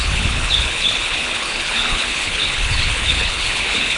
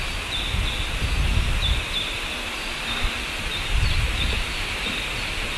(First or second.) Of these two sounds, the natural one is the second